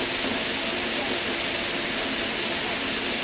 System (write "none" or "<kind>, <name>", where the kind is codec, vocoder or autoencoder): none